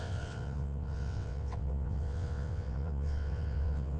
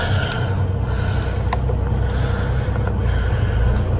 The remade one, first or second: first